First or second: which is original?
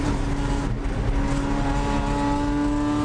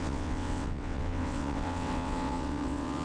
first